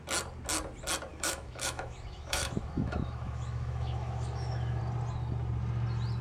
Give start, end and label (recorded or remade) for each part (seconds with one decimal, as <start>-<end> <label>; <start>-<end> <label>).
0.0-1.1 recorded; 1.1-4.8 remade; 4.8-6.2 recorded

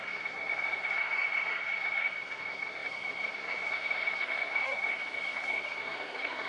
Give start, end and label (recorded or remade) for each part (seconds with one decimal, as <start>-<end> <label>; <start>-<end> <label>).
0.0-6.5 remade

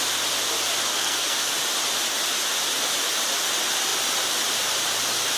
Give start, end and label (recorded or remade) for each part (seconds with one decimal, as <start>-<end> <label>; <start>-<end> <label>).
0.0-0.9 recorded; 0.9-1.5 remade; 1.5-5.4 recorded

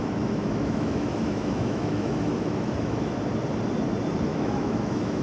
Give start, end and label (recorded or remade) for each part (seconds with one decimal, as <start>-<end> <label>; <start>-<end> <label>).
0.0-3.1 remade; 3.1-4.3 recorded; 4.3-5.2 remade